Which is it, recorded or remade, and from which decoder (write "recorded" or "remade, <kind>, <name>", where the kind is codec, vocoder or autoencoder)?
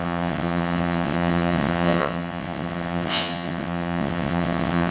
remade, vocoder, WaveNeXt